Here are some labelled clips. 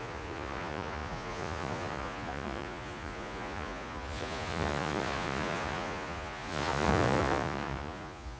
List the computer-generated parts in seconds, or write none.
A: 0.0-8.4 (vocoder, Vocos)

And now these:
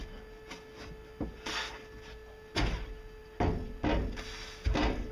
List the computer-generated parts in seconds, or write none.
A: none

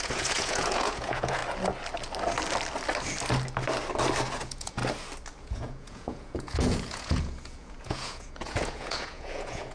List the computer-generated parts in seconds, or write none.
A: 0.0-1.4 (vocoder, Vocos); 4.3-4.8; 5.4-9.7

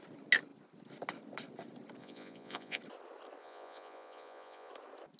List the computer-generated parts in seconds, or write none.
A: 2.0-2.8 (vocoder, Vocos); 3.4-4.7

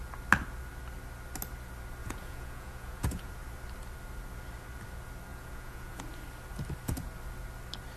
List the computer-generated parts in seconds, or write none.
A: 2.0-3.3 (vocoder, Vocos); 5.3-6.0

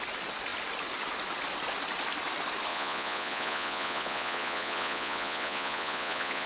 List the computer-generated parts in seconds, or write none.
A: 2.7-6.5 (vocoder, Vocos)

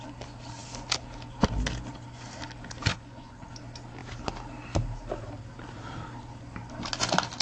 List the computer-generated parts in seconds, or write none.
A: 2.9-3.5 (vocoder, Vocos)